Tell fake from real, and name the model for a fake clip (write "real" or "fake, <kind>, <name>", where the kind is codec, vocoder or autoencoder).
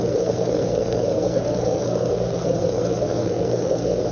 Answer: fake, codec, SNAC